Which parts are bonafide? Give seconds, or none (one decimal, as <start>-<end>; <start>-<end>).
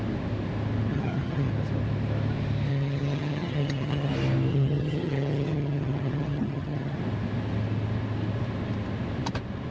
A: 0.0-0.9; 1.5-2.7; 4.1-4.5; 7.0-9.7